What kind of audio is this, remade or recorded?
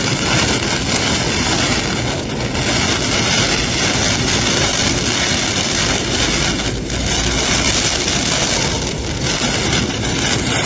recorded